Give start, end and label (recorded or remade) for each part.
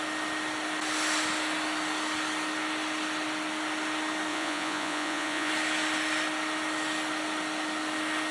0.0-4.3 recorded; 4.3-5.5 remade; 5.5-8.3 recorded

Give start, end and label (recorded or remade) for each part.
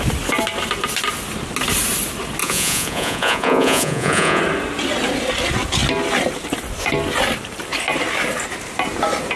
0.0-2.4 recorded; 2.4-4.4 remade; 4.4-9.4 recorded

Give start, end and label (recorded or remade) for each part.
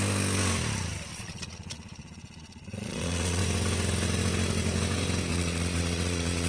0.0-1.1 recorded; 1.1-3.4 remade; 3.4-5.3 recorded; 5.3-6.5 remade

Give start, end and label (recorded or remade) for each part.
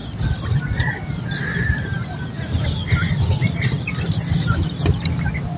0.0-3.0 recorded; 3.0-3.6 remade; 3.6-5.6 recorded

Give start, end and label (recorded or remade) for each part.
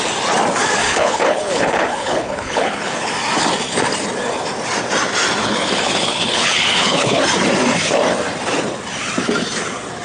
0.0-0.8 recorded; 0.8-3.1 remade; 3.1-5.4 recorded; 5.4-7.2 remade; 7.2-10.0 recorded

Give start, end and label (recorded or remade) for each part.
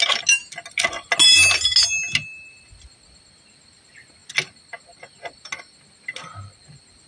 0.0-7.1 recorded